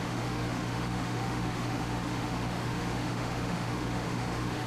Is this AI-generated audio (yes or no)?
yes